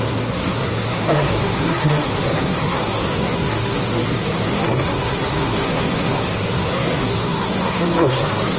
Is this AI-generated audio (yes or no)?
yes